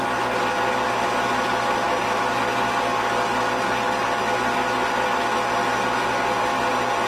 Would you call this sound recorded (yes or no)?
yes